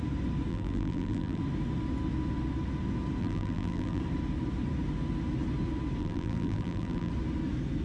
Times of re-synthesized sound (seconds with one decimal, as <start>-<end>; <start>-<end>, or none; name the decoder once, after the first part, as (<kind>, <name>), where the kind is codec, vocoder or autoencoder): 0.5-1.4 (vocoder, BigVGAN v2); 3.2-4.0; 6.0-7.1